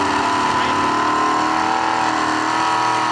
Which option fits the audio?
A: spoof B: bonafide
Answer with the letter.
B